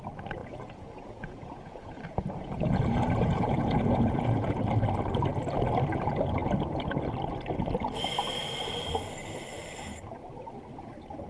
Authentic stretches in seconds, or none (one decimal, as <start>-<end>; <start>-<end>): 0.0-0.4; 4.6-11.3